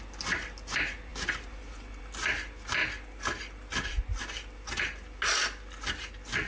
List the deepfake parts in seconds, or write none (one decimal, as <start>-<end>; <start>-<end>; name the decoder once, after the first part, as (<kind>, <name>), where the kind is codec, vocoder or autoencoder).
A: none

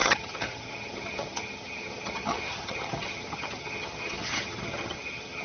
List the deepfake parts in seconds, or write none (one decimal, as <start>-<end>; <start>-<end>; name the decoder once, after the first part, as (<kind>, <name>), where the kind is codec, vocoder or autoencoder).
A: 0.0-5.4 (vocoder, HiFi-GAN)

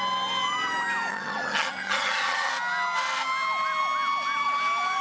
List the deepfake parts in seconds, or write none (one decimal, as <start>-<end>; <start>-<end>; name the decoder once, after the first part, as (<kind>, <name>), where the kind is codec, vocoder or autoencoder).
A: 1.1-2.5 (vocoder, HiFi-GAN)

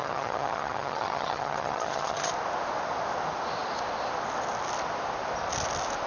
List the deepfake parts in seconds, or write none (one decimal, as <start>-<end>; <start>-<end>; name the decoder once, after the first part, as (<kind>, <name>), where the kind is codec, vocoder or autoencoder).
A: 0.0-2.3 (vocoder, HiFi-GAN)

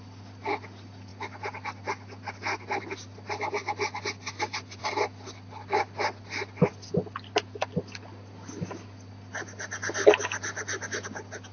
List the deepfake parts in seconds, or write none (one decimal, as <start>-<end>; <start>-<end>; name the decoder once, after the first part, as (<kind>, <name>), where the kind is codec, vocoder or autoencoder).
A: none